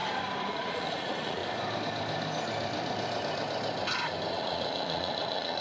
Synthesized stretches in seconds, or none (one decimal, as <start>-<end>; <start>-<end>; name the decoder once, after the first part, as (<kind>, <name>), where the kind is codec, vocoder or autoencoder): 0.5-1.4 (vocoder, Vocos); 4.3-5.6